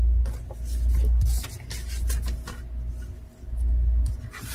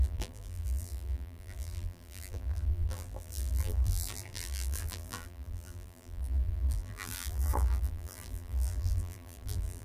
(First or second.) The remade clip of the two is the second